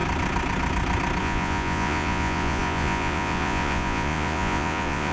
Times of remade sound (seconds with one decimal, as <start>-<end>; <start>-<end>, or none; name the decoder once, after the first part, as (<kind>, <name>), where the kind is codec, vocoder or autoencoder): 1.2-5.1 (vocoder, Vocos)